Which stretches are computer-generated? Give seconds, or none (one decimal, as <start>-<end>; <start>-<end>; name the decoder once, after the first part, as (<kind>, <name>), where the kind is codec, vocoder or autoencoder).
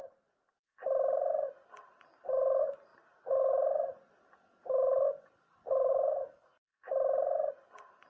none